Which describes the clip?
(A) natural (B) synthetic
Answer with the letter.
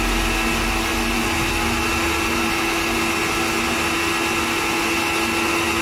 A